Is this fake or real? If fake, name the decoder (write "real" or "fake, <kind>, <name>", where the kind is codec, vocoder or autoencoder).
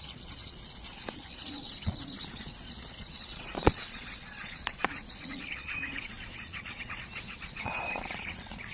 fake, vocoder, Vocos